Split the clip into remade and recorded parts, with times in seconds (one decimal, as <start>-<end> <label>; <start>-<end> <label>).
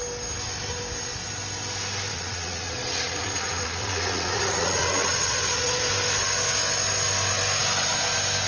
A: 0.0-2.1 recorded; 2.1-5.9 remade; 5.9-8.5 recorded